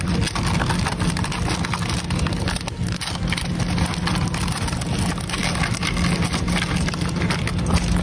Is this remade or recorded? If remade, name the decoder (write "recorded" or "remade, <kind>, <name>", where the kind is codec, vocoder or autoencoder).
recorded